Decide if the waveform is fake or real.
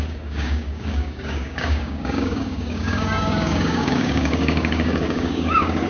fake